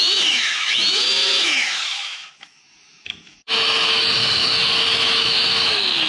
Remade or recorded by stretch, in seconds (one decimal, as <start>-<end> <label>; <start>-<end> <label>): 0.0-6.1 remade